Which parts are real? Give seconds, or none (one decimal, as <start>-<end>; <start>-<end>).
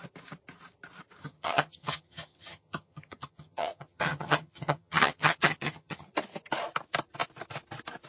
0.0-1.2; 6.1-8.1